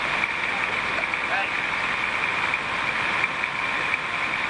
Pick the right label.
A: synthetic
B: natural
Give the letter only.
B